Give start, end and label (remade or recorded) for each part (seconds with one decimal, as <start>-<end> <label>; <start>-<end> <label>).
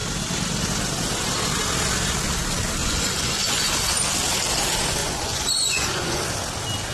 0.0-2.8 recorded; 2.8-3.7 remade; 3.7-5.0 recorded; 5.0-6.2 remade; 6.2-6.9 recorded